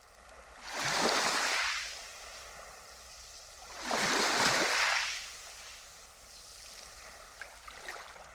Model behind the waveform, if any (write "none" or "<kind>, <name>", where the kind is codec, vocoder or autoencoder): none